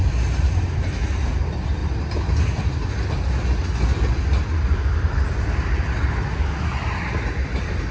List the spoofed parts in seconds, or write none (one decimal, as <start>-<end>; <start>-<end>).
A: none